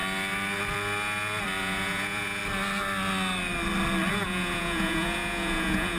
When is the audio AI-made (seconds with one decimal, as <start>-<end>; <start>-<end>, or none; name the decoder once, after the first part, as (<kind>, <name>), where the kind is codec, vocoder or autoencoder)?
1.6-2.4 (vocoder, Vocos); 4.1-6.0

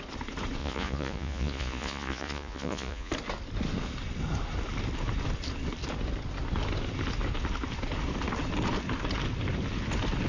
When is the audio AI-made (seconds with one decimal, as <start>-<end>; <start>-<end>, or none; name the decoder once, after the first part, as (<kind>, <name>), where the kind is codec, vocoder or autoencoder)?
0.6-3.1 (vocoder, Vocos)